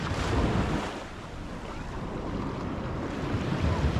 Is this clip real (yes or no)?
yes